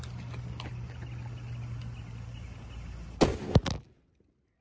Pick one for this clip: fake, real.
real